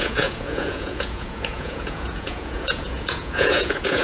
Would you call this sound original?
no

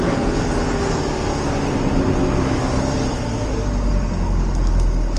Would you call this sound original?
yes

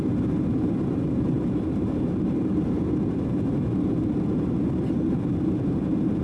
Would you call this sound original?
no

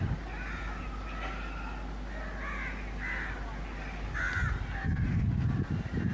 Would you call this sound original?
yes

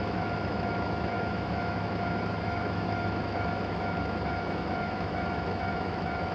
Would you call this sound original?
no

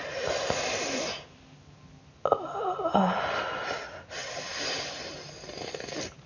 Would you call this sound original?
yes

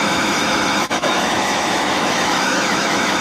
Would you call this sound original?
no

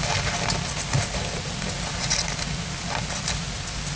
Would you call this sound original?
yes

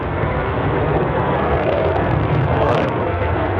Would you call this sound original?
no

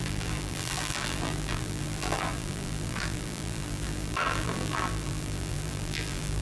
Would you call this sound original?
no